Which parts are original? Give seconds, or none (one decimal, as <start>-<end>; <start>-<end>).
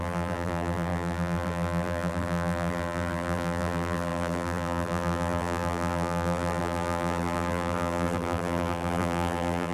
none